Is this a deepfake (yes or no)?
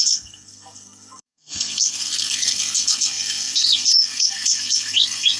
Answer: yes